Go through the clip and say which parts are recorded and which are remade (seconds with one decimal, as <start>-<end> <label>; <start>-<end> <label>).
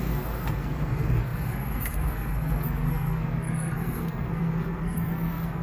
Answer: 0.0-5.6 remade